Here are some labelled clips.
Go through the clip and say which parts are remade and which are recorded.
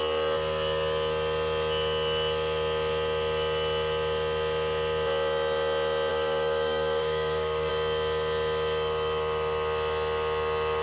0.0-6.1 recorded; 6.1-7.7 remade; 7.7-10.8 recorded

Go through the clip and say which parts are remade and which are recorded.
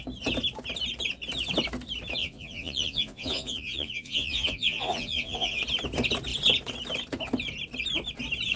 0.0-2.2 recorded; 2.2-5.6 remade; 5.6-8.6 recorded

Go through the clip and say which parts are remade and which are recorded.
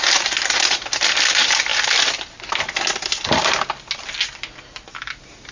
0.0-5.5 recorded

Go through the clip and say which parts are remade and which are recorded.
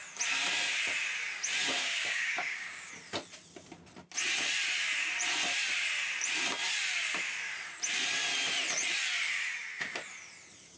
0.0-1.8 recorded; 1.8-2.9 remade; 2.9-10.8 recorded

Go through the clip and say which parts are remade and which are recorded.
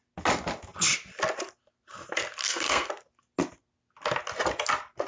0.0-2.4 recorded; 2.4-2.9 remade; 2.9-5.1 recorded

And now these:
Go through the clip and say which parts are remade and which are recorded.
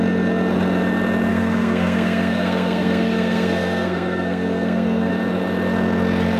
0.0-1.3 recorded; 1.3-5.1 remade; 5.1-6.4 recorded